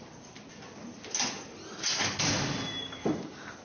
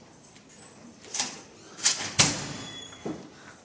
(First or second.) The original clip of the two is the first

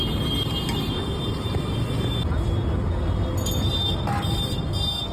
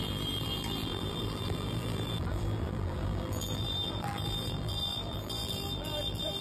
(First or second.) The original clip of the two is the first